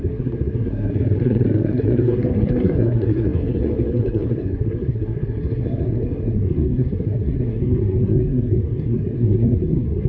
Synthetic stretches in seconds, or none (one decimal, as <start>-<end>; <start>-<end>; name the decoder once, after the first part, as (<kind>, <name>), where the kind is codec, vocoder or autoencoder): 0.0-10.1 (codec, SNAC)